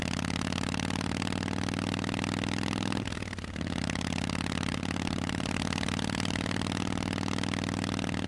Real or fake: real